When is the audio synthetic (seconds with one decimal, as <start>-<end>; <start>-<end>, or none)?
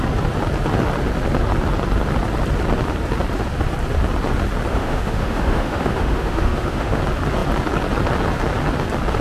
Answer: 4.7-7.0